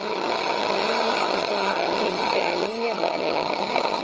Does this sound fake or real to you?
fake